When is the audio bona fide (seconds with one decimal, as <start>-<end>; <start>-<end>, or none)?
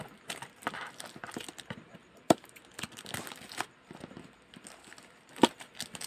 0.0-2.0; 2.6-6.1